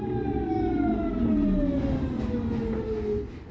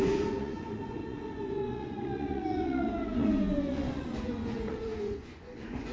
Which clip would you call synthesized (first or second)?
second